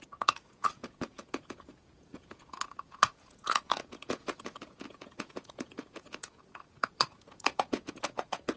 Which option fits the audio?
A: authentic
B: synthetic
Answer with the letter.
B